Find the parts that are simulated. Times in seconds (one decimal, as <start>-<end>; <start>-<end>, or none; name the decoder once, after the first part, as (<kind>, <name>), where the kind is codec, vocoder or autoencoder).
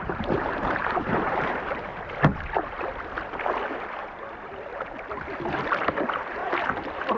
0.0-1.9 (vocoder, BigVGAN v2); 5.9-6.4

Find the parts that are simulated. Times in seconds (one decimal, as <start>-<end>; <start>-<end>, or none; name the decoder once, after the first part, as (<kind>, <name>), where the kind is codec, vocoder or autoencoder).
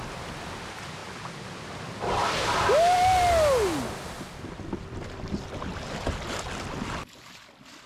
none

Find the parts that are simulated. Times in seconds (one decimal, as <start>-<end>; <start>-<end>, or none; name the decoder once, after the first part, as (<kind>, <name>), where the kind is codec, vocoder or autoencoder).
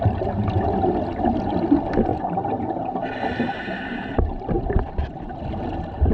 2.1-5.4 (vocoder, BigVGAN v2)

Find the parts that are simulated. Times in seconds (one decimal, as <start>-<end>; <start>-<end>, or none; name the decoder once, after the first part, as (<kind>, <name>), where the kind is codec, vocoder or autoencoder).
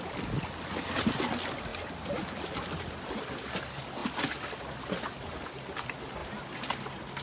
1.7-2.6 (vocoder, BigVGAN v2)